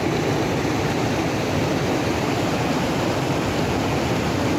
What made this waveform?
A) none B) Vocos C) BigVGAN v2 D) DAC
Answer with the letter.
A